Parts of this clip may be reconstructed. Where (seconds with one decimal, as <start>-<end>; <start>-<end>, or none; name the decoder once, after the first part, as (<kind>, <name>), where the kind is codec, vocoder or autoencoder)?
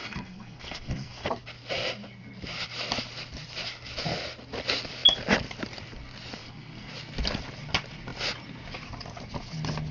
0.0-1.3 (codec, SNAC); 6.4-6.9